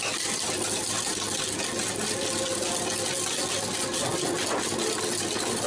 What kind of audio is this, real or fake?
real